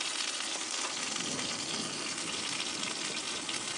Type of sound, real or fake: real